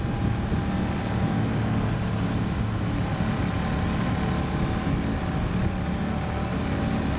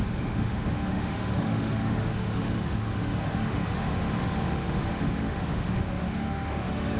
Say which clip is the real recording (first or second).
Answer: first